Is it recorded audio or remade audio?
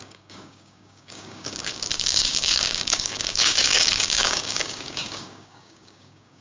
remade